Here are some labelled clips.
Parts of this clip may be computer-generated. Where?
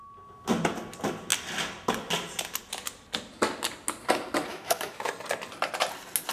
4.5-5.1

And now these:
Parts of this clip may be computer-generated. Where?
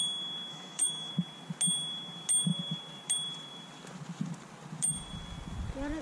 0.5-1.1